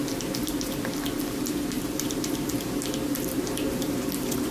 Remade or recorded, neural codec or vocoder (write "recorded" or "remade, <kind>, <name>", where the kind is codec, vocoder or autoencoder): remade, vocoder, BigVGAN v2